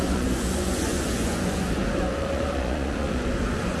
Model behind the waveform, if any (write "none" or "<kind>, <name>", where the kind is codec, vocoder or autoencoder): vocoder, Vocos